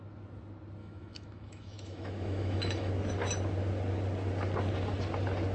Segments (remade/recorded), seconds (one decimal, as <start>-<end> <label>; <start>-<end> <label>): 0.0-0.8 recorded; 0.8-2.9 remade; 2.9-5.5 recorded